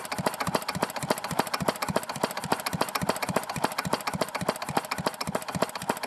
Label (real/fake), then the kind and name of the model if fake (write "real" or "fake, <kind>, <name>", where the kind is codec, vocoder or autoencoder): real